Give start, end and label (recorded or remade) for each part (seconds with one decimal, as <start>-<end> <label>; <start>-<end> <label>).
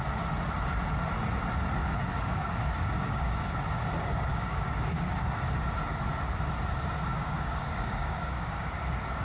0.0-1.8 recorded; 1.8-3.3 remade; 3.3-4.3 recorded; 4.3-5.5 remade; 5.5-7.1 recorded; 7.1-8.7 remade; 8.7-9.2 recorded